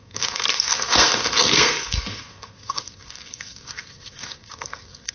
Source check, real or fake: fake